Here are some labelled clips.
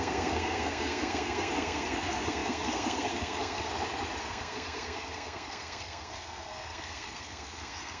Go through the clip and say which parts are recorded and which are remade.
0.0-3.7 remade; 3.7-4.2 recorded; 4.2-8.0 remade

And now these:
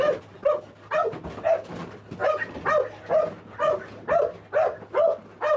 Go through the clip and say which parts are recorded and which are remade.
0.0-5.6 recorded

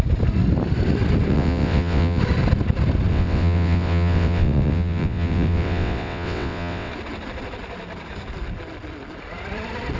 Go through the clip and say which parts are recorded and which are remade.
0.0-1.3 recorded; 1.3-2.2 remade; 2.2-3.1 recorded; 3.1-6.9 remade; 6.9-10.0 recorded

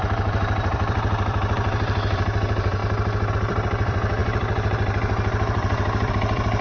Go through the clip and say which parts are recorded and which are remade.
0.0-2.8 remade; 2.8-3.3 recorded; 3.3-6.6 remade

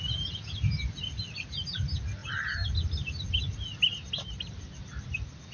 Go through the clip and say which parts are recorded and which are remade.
0.0-5.5 recorded

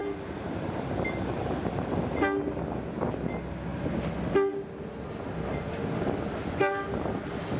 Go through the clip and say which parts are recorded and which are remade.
0.0-7.6 recorded